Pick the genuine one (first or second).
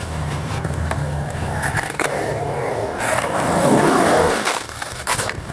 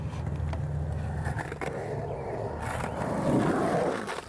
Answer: second